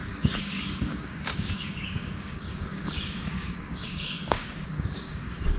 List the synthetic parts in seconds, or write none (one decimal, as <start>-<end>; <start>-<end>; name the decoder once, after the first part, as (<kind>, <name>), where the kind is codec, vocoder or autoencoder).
0.0-5.6 (codec, DAC)